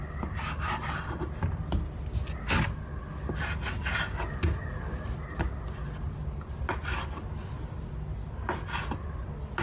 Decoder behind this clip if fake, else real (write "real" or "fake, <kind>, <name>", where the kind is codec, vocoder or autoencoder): real